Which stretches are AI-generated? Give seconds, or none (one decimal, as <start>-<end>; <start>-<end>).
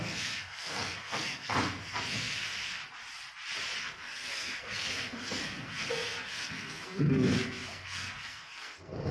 0.0-2.8; 3.8-9.1